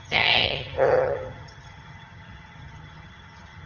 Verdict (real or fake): fake